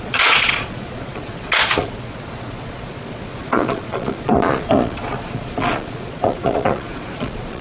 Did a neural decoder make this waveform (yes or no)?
yes